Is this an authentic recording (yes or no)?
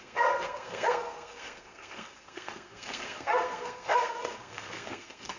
no